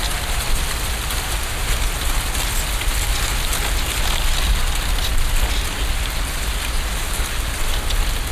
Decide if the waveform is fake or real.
real